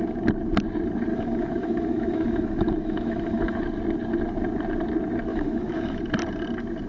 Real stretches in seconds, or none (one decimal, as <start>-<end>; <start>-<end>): 0.0-1.1; 3.6-5.3; 6.0-6.9